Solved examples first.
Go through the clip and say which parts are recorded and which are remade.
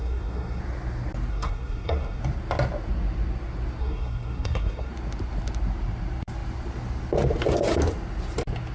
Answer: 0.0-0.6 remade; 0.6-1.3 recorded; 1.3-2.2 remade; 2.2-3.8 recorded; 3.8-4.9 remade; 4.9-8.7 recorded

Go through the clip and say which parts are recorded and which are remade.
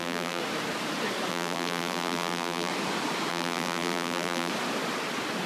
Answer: 0.0-0.4 remade; 0.4-1.3 recorded; 1.3-2.7 remade; 2.7-3.3 recorded; 3.3-4.5 remade; 4.5-5.5 recorded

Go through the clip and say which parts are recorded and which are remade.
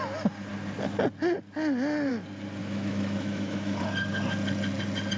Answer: 0.0-2.6 recorded; 2.6-3.8 remade; 3.8-5.2 recorded